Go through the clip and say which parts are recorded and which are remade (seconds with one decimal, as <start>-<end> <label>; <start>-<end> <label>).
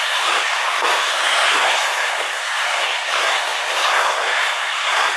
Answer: 0.0-5.2 remade